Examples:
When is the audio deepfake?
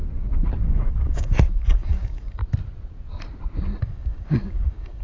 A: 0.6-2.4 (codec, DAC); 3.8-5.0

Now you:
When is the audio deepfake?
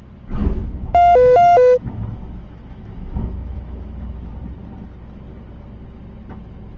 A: 0.4-4.3 (autoencoder, DAC-VAE)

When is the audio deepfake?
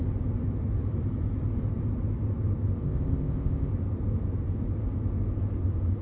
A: 2.8-3.7 (codec, ZipCodec)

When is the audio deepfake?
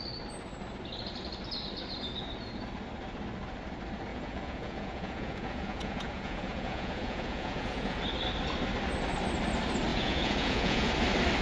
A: 4.1-8.0 (vocoder, Vocos); 9.9-10.9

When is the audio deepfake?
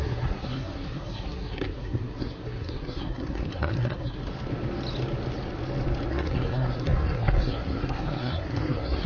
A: 0.0-4.2 (codec, SNAC); 6.1-9.1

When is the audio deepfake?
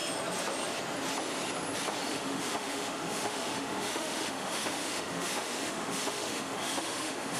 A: 2.1-7.4 (autoencoder, DAC-VAE)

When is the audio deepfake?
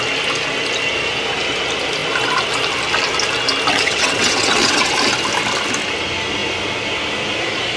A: 3.7-4.9 (vocoder, WaveNeXt)